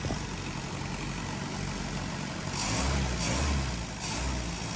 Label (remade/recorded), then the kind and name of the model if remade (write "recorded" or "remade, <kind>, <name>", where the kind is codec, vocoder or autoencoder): recorded